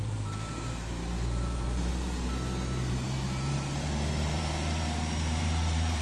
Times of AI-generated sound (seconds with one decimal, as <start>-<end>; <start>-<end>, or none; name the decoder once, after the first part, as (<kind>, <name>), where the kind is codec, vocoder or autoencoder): 0.0-1.9 (vocoder, BigVGAN v2); 2.9-6.0